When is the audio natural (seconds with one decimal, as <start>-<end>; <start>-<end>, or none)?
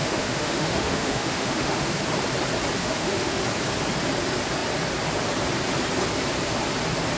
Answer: 2.0-2.8; 3.4-7.2